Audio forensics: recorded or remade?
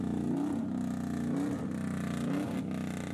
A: recorded